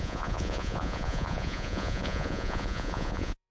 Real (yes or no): no